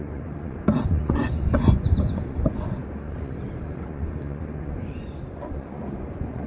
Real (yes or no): no